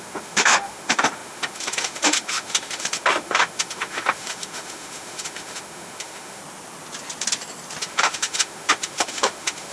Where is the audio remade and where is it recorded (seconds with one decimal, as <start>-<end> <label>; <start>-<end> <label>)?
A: 0.0-6.4 remade; 6.4-7.8 recorded; 7.8-9.7 remade